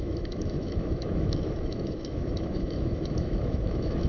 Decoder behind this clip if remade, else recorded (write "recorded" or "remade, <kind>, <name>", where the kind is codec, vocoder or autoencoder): remade, autoencoder, DAC-VAE